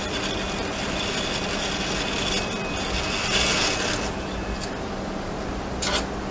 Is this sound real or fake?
real